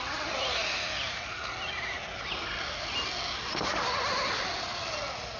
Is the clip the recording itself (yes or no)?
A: yes